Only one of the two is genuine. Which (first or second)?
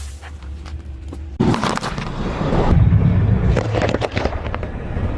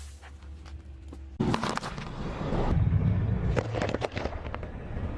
second